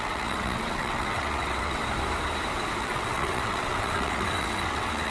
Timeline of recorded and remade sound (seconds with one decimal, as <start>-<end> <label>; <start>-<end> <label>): 0.0-1.8 remade; 1.8-2.8 recorded; 2.8-5.1 remade